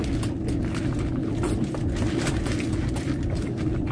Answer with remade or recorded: recorded